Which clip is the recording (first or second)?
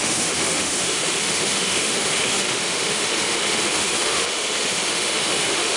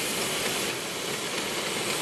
second